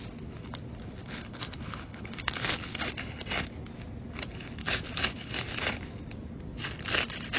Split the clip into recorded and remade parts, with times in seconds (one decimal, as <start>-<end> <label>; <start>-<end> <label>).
0.0-1.0 recorded; 1.0-2.9 remade; 2.9-4.6 recorded; 4.6-5.3 remade; 5.3-7.4 recorded